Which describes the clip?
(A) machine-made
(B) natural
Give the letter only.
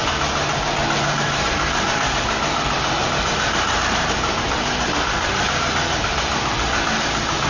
B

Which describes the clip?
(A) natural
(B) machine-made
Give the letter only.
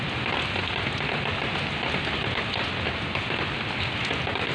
A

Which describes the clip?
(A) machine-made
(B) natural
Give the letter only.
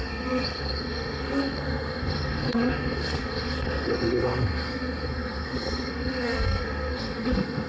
A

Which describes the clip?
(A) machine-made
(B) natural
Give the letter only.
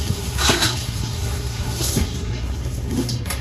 A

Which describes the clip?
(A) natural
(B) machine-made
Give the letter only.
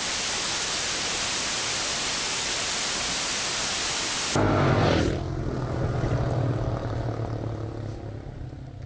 A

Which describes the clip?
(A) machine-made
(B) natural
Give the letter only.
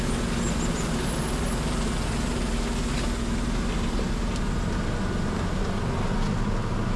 B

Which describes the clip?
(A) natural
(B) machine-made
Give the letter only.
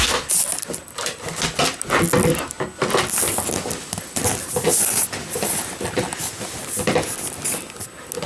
A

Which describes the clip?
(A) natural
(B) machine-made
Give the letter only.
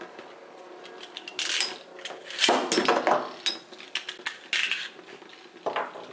A